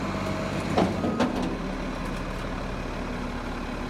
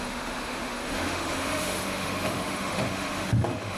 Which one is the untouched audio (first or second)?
first